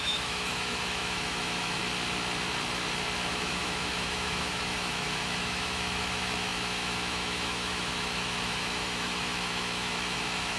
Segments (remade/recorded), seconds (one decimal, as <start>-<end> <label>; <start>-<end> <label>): 0.0-1.8 remade; 1.8-3.3 recorded; 3.3-10.6 remade